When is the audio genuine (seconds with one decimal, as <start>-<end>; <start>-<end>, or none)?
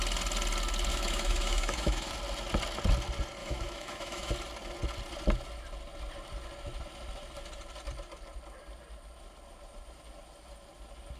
0.0-0.9; 2.1-3.4; 4.3-11.2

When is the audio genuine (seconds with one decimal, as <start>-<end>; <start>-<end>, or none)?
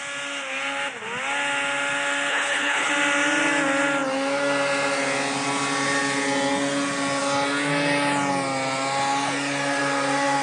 0.0-2.3; 2.9-10.4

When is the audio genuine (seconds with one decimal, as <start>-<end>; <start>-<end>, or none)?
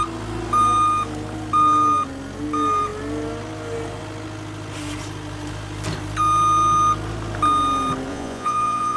0.0-8.1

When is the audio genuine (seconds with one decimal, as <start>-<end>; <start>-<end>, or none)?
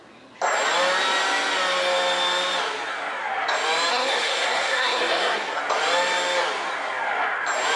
0.0-3.9; 5.6-7.8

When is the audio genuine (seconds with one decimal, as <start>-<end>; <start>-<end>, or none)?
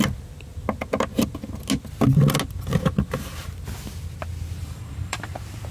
0.0-4.6; 5.3-5.7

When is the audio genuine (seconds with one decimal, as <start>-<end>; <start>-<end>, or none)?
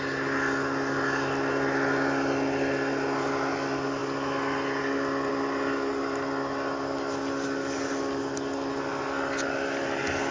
0.0-10.3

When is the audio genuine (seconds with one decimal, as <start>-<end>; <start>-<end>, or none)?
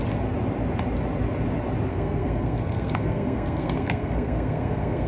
0.0-1.9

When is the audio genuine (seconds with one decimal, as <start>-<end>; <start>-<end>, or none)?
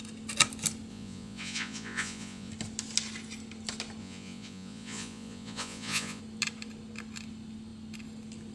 0.0-0.9; 2.5-4.0; 6.2-8.5